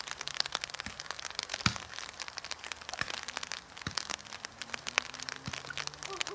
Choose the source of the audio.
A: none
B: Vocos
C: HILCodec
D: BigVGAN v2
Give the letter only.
A